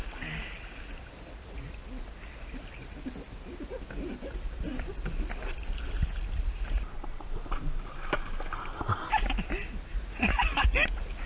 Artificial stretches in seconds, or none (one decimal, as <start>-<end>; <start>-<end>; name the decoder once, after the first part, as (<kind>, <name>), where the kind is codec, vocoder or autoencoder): 9.9-10.6 (vocoder, Vocos)